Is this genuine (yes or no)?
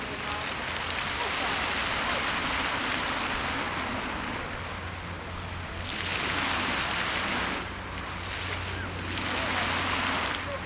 yes